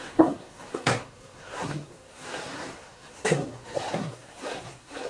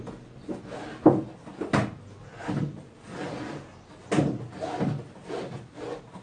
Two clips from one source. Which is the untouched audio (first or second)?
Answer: second